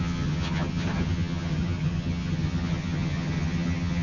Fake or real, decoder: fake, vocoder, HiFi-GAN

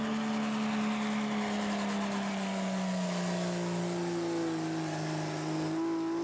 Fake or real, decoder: real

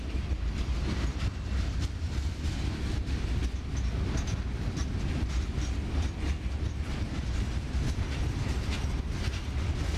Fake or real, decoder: real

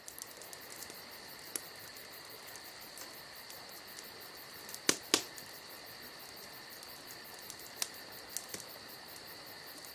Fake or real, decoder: real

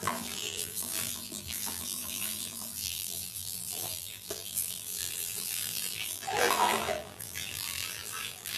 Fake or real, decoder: fake, vocoder, BigVGAN v2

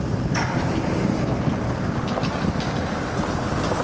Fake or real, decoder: real